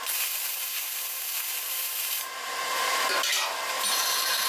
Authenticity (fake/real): fake